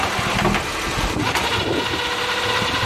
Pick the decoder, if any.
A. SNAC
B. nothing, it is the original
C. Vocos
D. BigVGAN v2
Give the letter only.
B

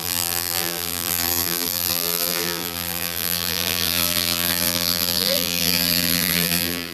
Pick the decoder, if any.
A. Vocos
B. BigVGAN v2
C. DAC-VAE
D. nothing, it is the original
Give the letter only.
B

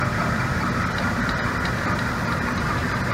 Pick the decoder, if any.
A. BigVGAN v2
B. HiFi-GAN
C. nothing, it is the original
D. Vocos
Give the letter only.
A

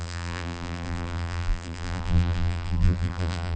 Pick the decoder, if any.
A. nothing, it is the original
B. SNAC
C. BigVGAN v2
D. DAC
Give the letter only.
C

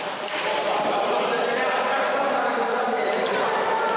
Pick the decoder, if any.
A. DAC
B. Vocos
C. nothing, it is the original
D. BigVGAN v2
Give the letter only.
C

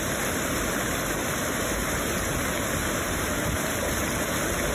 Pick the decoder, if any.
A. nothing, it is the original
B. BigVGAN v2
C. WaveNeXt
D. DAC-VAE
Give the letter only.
A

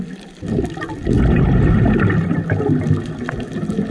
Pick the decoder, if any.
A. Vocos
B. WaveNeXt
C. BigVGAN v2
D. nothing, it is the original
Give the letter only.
D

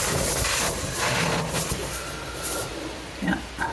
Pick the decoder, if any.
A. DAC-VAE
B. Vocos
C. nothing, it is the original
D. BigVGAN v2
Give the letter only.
C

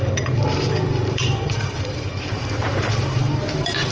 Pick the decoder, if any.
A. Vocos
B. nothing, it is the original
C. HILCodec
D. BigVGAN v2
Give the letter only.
D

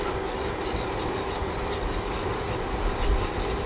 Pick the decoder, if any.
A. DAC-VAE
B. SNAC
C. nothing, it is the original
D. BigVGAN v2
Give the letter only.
C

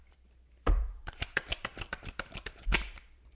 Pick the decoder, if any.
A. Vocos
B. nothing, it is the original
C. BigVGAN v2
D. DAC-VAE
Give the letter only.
C